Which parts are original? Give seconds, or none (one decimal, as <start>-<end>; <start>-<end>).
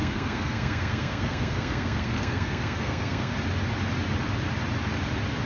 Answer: 3.3-5.5